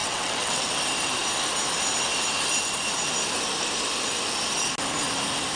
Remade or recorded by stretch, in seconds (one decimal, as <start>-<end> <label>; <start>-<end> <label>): 0.0-0.7 remade; 0.7-5.6 recorded